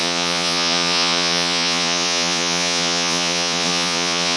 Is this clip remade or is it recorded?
remade